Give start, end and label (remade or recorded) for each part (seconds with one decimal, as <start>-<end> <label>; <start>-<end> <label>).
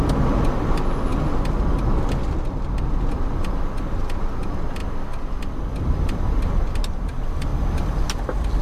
0.0-8.6 recorded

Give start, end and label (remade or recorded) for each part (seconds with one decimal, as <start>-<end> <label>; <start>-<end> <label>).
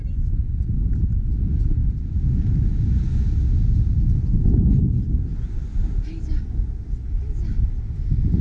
0.0-8.4 recorded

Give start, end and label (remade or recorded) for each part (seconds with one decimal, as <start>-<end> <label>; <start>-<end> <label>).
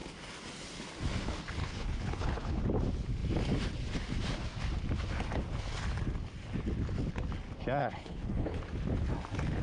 0.0-1.6 recorded; 1.6-2.6 remade; 2.6-7.8 recorded; 7.8-8.6 remade; 8.6-9.6 recorded